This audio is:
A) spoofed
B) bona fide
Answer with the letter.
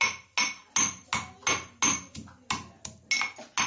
B